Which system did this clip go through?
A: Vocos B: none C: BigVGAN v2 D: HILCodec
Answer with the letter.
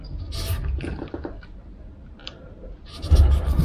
B